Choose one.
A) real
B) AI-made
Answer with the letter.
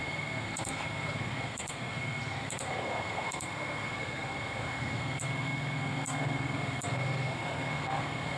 B